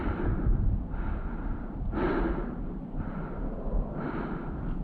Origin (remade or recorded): recorded